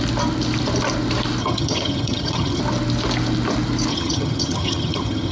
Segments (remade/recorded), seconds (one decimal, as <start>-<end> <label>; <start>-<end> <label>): 0.0-1.4 recorded; 1.4-2.6 remade; 2.6-3.9 recorded; 3.9-5.3 remade